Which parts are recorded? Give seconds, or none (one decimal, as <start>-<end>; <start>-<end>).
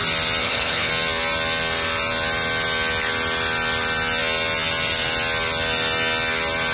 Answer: 0.0-0.4; 0.9-6.7